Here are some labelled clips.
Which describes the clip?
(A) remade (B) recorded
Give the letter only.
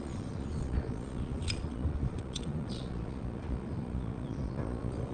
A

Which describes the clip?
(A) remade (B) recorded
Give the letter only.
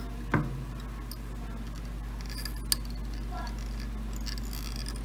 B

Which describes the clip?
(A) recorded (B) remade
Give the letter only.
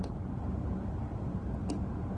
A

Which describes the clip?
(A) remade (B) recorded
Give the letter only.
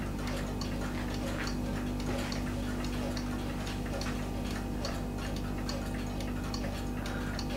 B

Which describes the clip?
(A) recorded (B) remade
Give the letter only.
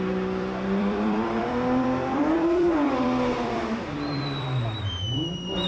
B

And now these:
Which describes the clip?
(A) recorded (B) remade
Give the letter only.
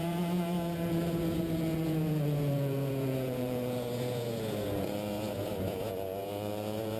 B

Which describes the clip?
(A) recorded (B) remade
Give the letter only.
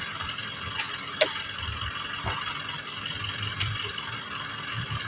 B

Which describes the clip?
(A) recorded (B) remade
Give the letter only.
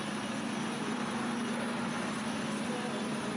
A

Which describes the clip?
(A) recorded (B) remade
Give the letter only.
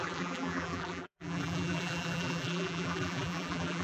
B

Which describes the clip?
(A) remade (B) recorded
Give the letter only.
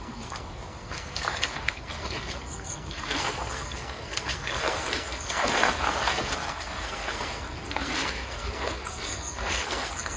A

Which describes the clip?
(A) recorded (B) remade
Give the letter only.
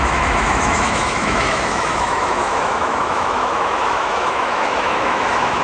B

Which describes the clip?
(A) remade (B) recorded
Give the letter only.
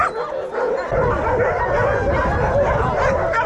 B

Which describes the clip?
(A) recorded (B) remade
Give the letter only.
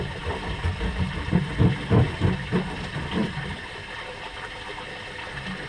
A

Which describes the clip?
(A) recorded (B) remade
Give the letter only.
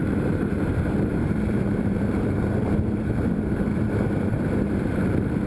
B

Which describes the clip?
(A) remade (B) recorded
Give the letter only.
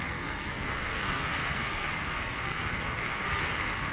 A